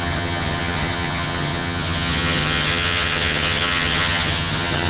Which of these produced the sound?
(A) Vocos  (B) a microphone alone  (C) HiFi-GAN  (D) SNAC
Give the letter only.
C